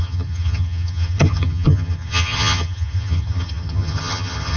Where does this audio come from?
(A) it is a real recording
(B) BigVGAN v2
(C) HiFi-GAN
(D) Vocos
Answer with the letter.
C